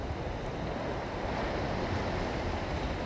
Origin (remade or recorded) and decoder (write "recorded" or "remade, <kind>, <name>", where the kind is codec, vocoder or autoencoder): remade, vocoder, BigVGAN v2